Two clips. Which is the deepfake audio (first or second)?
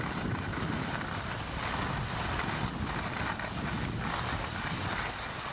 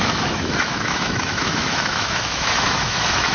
second